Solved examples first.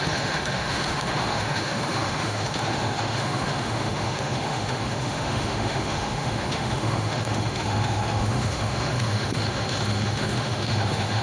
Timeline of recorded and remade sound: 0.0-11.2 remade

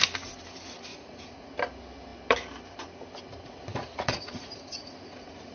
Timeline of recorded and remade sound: 0.0-0.9 recorded; 0.9-1.5 remade; 1.5-3.7 recorded; 3.7-5.5 remade